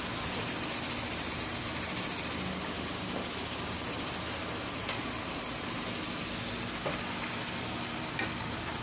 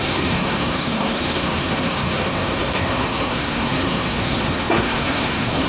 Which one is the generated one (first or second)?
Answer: second